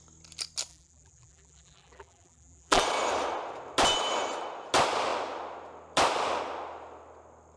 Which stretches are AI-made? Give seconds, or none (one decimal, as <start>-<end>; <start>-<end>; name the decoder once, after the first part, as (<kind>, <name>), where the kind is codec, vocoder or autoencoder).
0.7-2.8 (vocoder, BigVGAN v2)